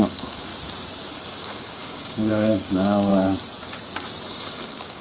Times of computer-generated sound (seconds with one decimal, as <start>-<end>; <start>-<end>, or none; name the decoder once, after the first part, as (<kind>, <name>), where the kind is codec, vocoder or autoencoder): 0.0-0.5 (codec, DAC); 1.1-3.1; 4.3-5.0